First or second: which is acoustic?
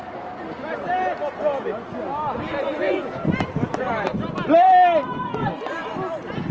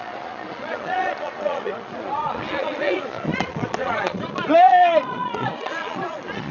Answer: first